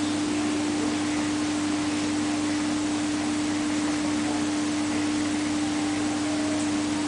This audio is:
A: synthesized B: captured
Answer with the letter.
B